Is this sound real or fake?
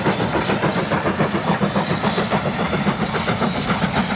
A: real